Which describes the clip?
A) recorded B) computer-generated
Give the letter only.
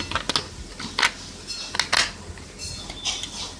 A